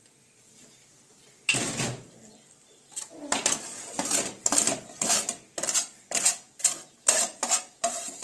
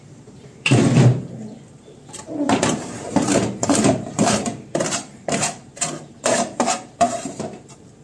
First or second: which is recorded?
first